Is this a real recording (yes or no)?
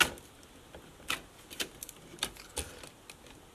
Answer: yes